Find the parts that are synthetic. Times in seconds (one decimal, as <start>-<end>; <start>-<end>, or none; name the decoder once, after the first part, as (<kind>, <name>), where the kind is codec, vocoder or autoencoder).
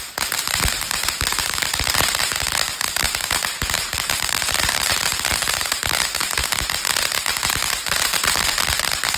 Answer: 0.0-9.2 (vocoder, BigVGAN v2)